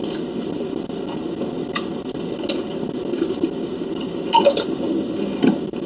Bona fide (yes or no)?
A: yes